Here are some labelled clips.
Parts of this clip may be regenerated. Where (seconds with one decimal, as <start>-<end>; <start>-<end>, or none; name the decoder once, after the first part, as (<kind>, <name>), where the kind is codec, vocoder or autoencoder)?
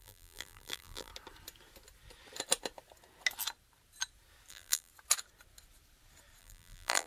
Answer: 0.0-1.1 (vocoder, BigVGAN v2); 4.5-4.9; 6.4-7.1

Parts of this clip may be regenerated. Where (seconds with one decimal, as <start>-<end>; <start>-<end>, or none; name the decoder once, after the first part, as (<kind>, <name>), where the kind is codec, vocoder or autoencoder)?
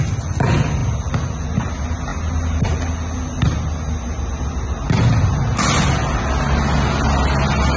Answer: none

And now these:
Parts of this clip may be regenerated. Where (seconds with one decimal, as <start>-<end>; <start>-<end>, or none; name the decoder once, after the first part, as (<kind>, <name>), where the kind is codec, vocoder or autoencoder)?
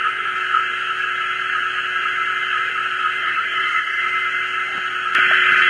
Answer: 3.2-4.0 (codec, SNAC)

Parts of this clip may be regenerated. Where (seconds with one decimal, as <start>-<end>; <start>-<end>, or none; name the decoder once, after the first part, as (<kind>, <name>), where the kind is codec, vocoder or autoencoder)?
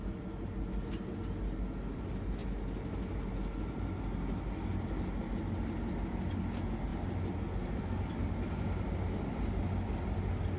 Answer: none